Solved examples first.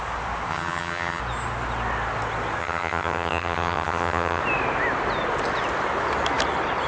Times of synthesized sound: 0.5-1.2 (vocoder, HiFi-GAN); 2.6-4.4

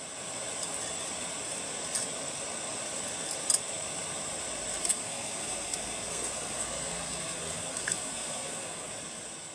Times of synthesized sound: 4.8-8.9 (codec, SNAC)

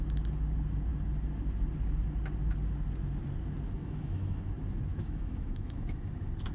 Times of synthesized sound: 3.8-4.5 (autoencoder, DAC-VAE); 4.9-6.1

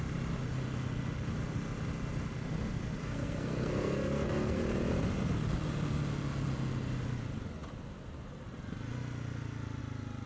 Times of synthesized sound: 3.0-4.6 (codec, SNAC)

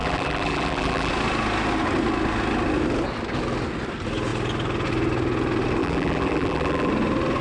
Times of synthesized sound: 0.0-1.1 (vocoder, BigVGAN v2); 5.8-6.9